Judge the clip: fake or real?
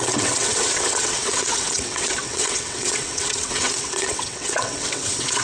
fake